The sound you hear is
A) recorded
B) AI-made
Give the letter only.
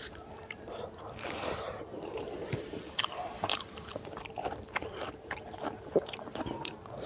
B